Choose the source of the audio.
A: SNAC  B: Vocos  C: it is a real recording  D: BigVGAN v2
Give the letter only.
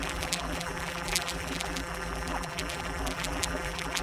D